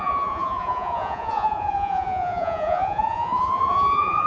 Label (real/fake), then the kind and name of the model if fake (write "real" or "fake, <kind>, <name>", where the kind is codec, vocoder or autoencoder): fake, vocoder, Vocos